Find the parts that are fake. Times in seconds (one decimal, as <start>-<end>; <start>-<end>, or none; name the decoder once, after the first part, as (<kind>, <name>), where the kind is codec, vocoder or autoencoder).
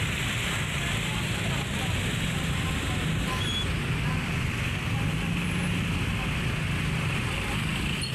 none